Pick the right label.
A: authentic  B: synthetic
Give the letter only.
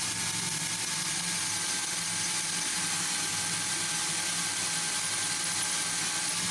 A